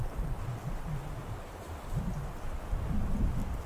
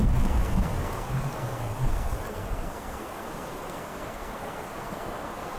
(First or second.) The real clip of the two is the first